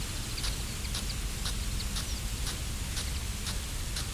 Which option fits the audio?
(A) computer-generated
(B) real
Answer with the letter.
B